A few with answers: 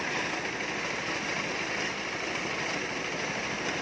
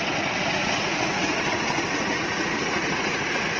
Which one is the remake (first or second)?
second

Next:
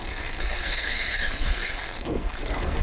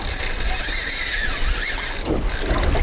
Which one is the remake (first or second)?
first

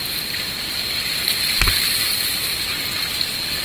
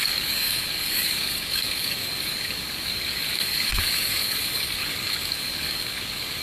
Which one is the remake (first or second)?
second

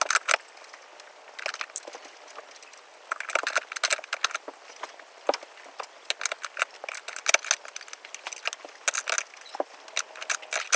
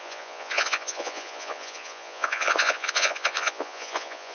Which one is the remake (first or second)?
second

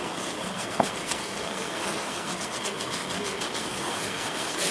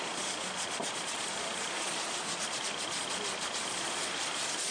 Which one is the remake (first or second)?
first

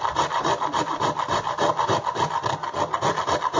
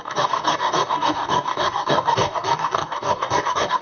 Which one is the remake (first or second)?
second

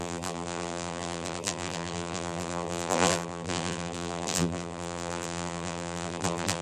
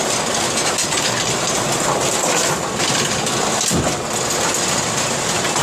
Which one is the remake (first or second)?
first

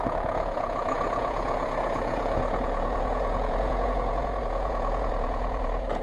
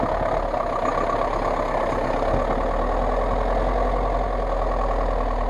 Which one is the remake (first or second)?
first